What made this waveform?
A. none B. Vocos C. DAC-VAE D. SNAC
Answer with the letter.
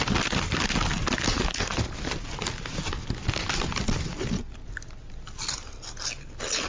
A